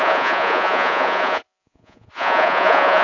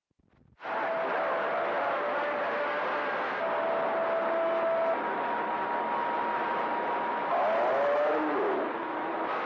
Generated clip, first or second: first